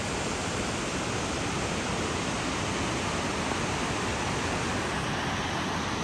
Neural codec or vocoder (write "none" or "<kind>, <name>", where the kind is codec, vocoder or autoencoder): none